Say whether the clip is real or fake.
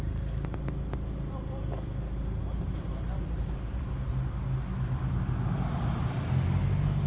real